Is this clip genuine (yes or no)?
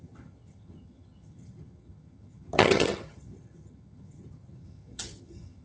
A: no